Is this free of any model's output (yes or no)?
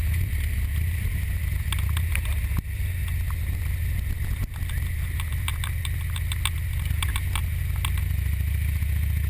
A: yes